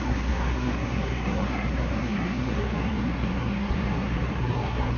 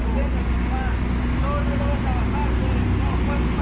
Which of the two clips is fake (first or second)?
first